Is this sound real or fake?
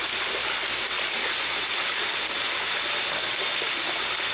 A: real